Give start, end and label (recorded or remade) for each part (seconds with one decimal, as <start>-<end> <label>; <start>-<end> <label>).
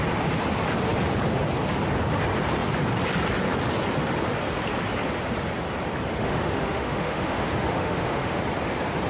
0.0-6.2 recorded; 6.2-8.4 remade; 8.4-9.1 recorded